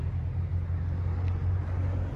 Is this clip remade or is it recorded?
recorded